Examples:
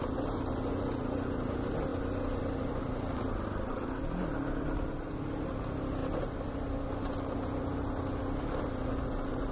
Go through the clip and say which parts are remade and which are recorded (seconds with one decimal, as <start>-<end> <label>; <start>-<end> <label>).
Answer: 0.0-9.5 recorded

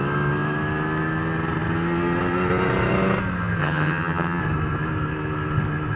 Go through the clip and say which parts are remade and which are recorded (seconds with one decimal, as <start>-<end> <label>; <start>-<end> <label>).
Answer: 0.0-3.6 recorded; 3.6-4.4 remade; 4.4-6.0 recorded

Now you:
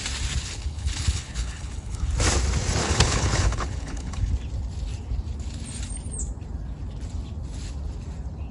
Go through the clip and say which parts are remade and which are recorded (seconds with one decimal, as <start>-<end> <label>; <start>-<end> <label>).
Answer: 0.0-0.4 recorded; 0.4-2.1 remade; 2.1-2.8 recorded; 2.8-4.3 remade; 4.3-8.5 recorded